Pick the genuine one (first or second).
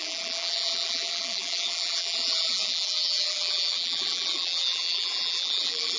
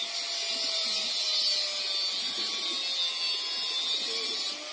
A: second